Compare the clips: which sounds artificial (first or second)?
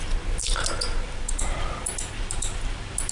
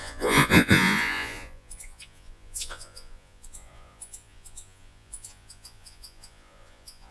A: second